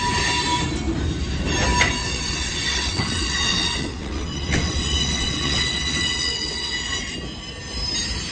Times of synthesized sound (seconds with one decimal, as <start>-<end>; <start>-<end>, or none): 2.0-6.7